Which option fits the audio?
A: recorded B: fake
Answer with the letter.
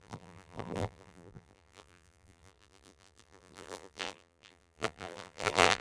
B